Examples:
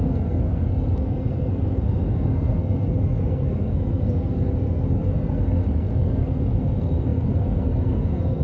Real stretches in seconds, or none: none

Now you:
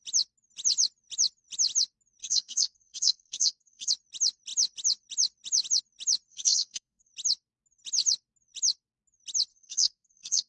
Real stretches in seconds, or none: 0.0-2.2; 3.9-6.3; 7.1-9.5

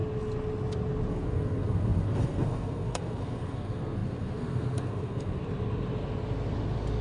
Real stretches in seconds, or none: 0.0-1.1; 5.4-7.0

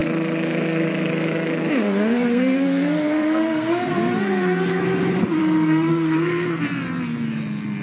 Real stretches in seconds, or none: 3.9-5.4; 6.6-7.8